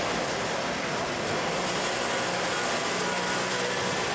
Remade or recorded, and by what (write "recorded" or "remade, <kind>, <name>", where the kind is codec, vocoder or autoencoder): recorded